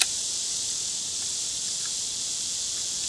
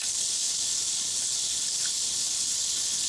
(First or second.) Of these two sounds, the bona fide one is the first